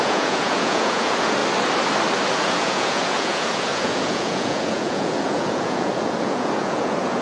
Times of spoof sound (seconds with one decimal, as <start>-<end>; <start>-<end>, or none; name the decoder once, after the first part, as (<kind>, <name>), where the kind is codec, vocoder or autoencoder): 0.0-1.4 (vocoder, Vocos); 2.4-7.2